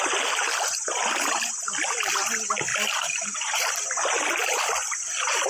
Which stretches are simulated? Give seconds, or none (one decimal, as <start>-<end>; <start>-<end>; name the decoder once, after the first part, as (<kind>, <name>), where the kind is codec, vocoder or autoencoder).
2.7-3.7 (vocoder, BigVGAN v2)